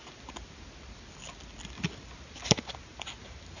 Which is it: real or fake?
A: real